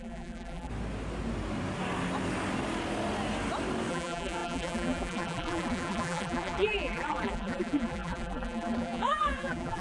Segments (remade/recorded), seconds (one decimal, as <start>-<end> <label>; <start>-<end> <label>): 0.0-0.7 remade; 0.7-3.9 recorded; 3.9-9.8 remade

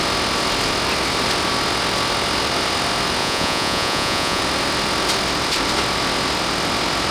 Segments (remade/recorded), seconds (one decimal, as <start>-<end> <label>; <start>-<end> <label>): 0.0-3.2 recorded; 3.2-4.4 remade; 4.4-7.1 recorded

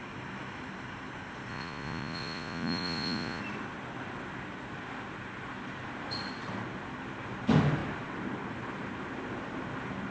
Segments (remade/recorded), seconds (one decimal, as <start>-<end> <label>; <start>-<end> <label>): 0.0-1.5 recorded; 1.5-3.4 remade; 3.4-10.1 recorded

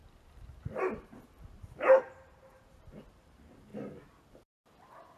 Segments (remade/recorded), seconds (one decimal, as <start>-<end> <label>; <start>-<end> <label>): 0.0-3.7 remade; 3.7-5.2 recorded

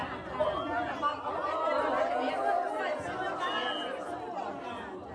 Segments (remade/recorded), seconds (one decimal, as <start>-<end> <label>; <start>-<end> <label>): 0.0-5.1 recorded

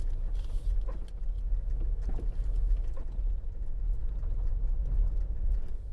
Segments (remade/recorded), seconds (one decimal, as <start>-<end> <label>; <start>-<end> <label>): 0.0-5.9 recorded